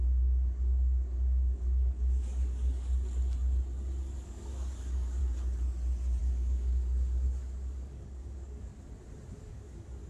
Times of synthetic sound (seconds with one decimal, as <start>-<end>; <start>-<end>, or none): 0.0-2.9; 4.0-5.2; 6.2-8.7; 9.3-10.1

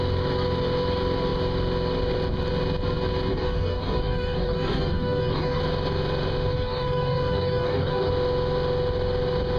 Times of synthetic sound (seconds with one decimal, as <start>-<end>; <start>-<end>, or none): 3.3-5.6; 6.5-8.1

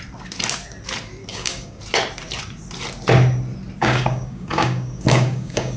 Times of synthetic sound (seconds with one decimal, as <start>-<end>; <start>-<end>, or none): 1.3-1.8; 3.8-5.8

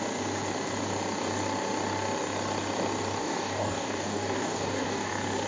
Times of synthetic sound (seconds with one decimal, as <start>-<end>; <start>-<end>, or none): 3.2-5.1

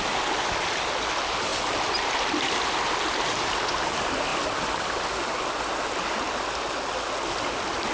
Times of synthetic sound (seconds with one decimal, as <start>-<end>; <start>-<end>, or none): none

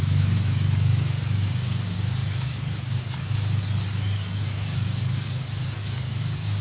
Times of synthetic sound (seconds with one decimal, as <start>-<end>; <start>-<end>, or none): 0.0-6.6

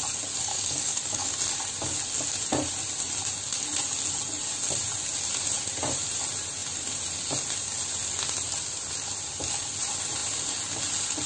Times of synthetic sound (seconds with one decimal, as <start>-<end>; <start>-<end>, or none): 0.5-1.3